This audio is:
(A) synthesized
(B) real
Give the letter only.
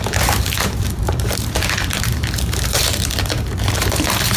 A